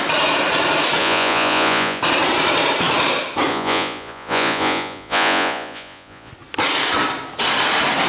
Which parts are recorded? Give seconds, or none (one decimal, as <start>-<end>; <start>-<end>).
0.0-1.0; 2.0-3.5; 6.3-8.1